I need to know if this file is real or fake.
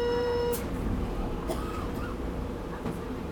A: fake